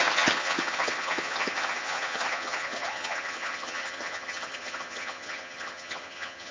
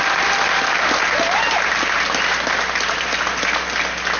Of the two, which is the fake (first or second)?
first